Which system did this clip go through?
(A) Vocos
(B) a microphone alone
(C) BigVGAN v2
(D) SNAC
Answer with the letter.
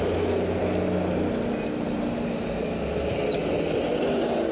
B